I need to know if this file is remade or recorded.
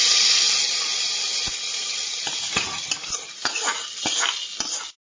recorded